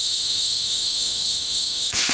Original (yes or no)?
no